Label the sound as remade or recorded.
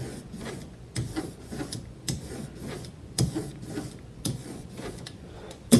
remade